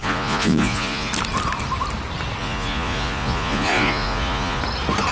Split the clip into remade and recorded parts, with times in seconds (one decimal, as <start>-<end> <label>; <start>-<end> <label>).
0.0-1.1 remade; 1.1-2.4 recorded; 2.4-4.6 remade; 4.6-5.1 recorded